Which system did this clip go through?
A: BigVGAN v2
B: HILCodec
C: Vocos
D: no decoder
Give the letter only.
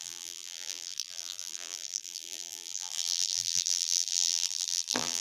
A